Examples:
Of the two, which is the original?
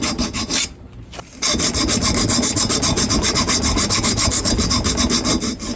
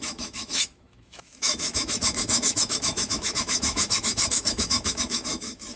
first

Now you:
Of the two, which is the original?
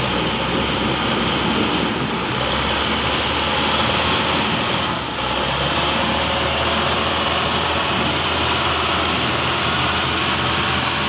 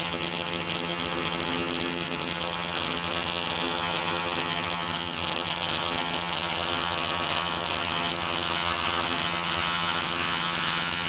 first